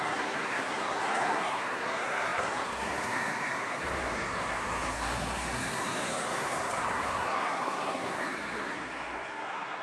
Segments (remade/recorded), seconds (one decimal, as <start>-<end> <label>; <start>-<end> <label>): 0.0-9.8 remade